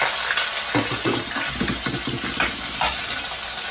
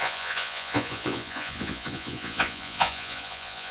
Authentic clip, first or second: first